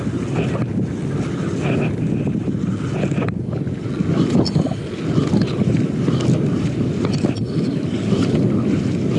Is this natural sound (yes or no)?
yes